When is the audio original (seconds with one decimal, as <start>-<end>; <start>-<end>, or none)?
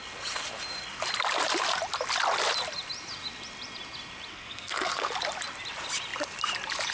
0.0-4.3; 5.1-6.9